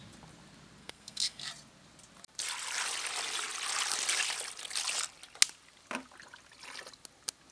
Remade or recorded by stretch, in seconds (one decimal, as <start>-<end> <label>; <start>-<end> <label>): 0.0-0.8 recorded; 0.8-1.5 remade; 1.5-7.5 recorded

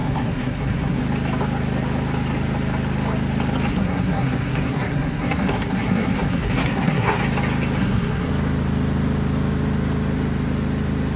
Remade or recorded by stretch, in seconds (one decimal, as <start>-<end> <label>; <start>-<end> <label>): 0.0-1.0 remade; 1.0-3.7 recorded; 3.7-7.2 remade; 7.2-7.8 recorded; 7.8-8.3 remade; 8.3-11.2 recorded